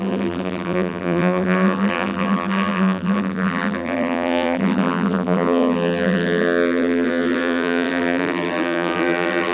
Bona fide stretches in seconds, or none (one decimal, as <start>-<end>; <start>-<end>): none